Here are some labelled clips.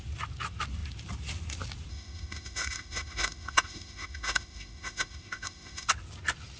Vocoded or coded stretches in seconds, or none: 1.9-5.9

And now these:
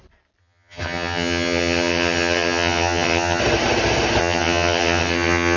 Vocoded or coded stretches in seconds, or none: 0.4-3.4; 4.2-5.6

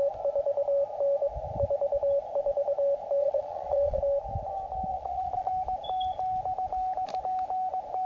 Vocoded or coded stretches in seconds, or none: 3.2-4.0; 4.9-5.5

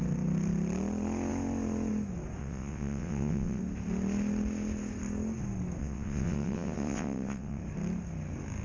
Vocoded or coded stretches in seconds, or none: 2.4-3.6; 5.8-7.6